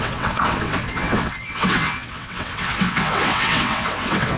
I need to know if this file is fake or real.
fake